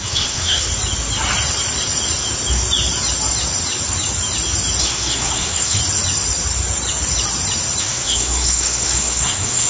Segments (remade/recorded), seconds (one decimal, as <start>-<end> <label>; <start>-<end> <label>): 0.0-0.7 remade; 0.7-4.8 recorded; 4.8-5.8 remade; 5.8-7.8 recorded; 7.8-9.7 remade